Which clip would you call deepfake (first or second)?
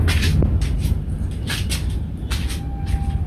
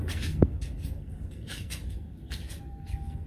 second